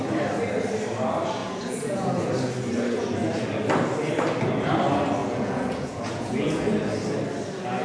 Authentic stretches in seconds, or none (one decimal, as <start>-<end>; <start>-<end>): 0.0-1.4; 2.3-5.2; 6.7-7.8